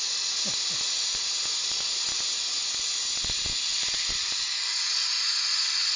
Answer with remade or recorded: recorded